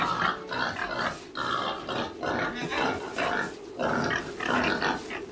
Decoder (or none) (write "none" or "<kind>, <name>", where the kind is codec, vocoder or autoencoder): none